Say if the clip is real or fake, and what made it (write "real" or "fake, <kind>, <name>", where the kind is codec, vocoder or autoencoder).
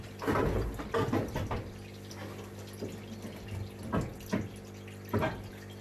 real